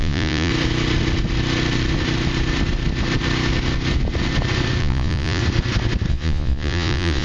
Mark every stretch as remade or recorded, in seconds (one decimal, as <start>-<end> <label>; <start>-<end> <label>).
0.0-0.5 remade; 0.5-4.8 recorded; 4.8-5.4 remade; 5.4-6.1 recorded; 6.1-7.2 remade